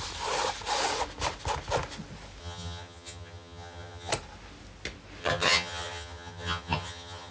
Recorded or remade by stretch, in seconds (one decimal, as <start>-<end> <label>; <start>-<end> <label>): 0.0-2.4 recorded; 2.4-4.1 remade; 4.1-5.2 recorded; 5.2-7.3 remade